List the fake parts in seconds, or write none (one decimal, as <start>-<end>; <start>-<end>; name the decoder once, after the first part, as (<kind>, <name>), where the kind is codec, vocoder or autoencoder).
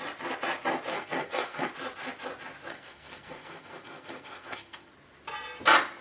0.9-1.7 (codec, SNAC); 2.7-4.9